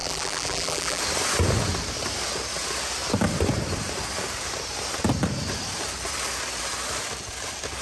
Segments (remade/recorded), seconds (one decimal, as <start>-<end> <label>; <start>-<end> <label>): 0.0-1.0 remade; 1.0-7.8 recorded

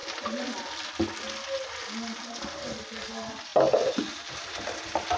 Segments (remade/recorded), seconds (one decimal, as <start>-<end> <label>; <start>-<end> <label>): 0.0-5.2 recorded

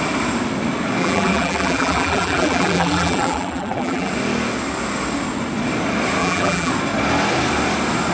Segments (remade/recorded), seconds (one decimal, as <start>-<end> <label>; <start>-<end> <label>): 0.0-1.0 recorded; 1.0-4.1 remade; 4.1-6.2 recorded; 6.2-6.7 remade; 6.7-8.1 recorded